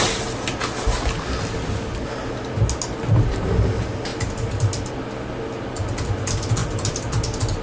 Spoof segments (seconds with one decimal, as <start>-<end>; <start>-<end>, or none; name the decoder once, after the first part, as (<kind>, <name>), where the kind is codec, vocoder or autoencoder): none

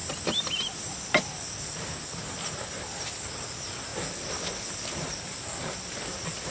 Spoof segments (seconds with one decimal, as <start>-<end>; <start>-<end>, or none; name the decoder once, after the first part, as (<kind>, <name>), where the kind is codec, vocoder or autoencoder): none